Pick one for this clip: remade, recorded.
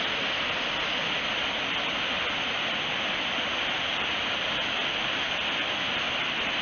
recorded